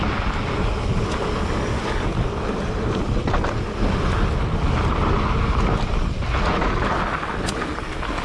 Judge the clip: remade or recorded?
recorded